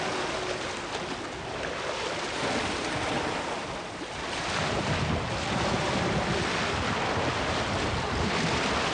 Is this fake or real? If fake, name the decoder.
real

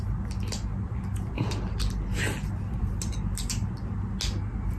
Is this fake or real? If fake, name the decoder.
real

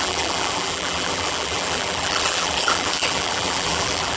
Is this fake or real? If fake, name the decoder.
fake, vocoder, BigVGAN v2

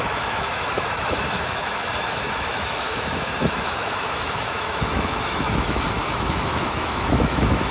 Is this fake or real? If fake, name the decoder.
fake, autoencoder, DAC-VAE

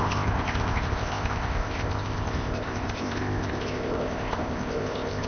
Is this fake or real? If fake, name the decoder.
fake, codec, ZipCodec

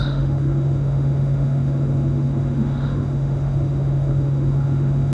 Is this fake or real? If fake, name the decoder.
fake, autoencoder, DAC-VAE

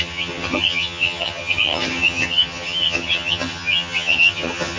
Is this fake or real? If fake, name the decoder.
fake, vocoder, HiFi-GAN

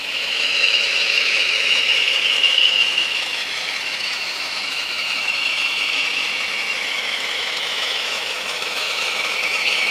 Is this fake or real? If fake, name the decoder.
fake, autoencoder, DAC-VAE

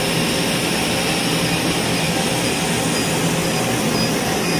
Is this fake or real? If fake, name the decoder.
real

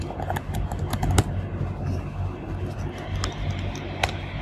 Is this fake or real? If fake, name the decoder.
real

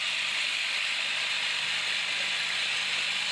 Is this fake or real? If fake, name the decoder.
real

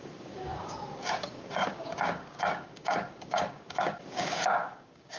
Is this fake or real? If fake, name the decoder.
fake, codec, DAC